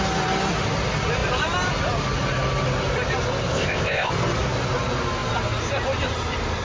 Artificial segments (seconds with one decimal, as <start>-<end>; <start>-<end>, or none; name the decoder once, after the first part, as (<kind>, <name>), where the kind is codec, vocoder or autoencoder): 3.5-4.1 (codec, ZipCodec)